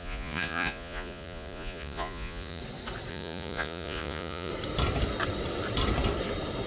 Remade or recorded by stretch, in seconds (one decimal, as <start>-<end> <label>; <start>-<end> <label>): 0.0-2.6 remade; 2.6-3.1 recorded; 3.1-4.5 remade; 4.5-6.7 recorded